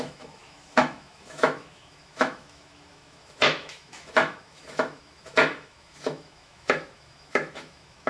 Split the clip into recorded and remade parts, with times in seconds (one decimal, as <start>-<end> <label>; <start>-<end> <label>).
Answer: 0.0-8.1 remade